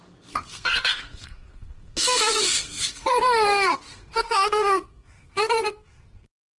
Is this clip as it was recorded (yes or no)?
no